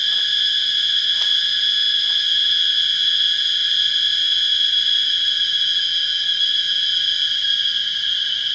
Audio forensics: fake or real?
real